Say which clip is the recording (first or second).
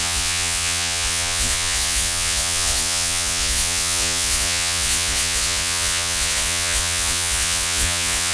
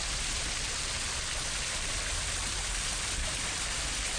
second